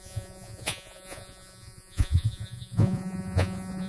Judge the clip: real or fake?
fake